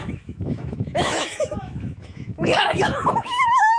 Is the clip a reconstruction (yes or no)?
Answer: yes